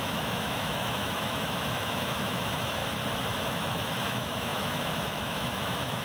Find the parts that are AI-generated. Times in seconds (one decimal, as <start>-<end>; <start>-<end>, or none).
0.0-2.8; 3.4-6.0